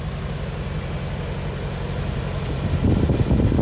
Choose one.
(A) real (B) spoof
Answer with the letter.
A